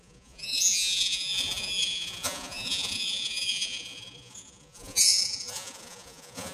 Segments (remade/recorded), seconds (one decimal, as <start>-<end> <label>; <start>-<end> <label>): 0.0-6.5 remade